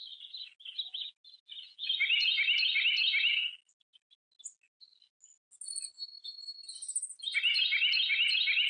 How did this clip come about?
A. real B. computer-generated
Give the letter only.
A